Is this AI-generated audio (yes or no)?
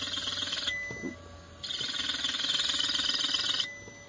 no